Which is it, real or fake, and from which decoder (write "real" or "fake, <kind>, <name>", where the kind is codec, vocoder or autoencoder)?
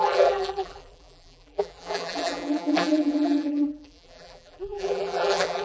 fake, vocoder, BigVGAN v2